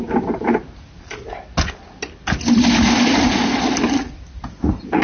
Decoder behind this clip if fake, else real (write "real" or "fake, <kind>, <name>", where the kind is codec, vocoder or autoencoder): real